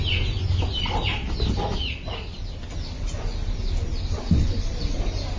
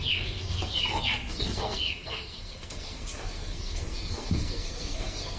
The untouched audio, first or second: first